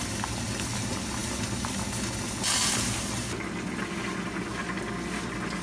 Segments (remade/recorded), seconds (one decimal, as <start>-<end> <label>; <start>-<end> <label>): 0.0-5.6 recorded